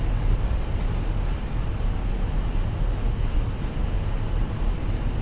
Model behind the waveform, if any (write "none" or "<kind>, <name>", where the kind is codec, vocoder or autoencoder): none